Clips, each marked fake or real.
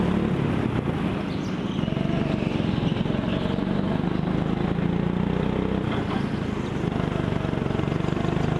real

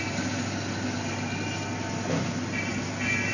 real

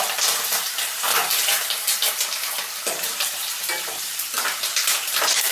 fake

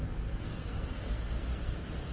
fake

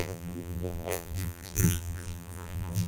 fake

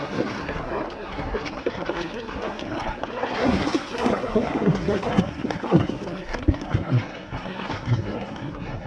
fake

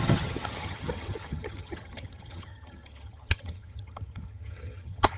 fake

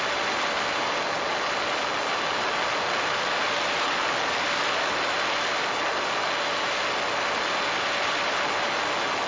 real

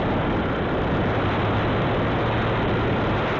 real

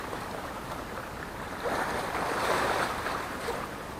fake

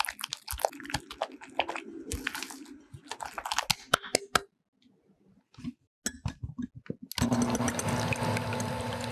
real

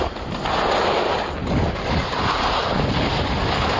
real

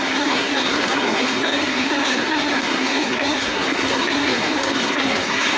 fake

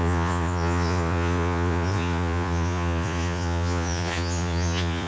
fake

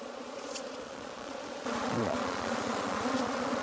fake